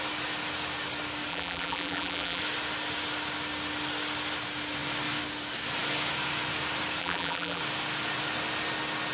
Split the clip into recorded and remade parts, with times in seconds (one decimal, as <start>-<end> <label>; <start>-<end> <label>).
0.0-1.3 recorded; 1.3-2.4 remade; 2.4-7.0 recorded; 7.0-7.6 remade; 7.6-9.1 recorded